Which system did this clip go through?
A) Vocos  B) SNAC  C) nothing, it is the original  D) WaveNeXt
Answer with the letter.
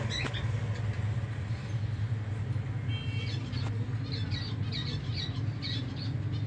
C